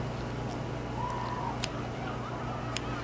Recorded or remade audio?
recorded